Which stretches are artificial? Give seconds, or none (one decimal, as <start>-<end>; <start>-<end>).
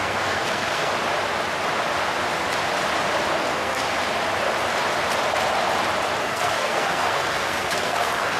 0.0-0.9; 3.4-3.8; 6.2-8.4